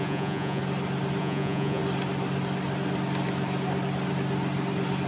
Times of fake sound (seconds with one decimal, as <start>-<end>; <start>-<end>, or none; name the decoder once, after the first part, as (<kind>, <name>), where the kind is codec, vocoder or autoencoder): 0.0-0.6 (vocoder, Vocos); 1.2-1.8